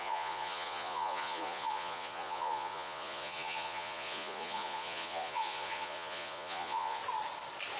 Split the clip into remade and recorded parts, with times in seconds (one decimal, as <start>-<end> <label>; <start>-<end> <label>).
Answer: 0.0-7.0 remade; 7.0-7.8 recorded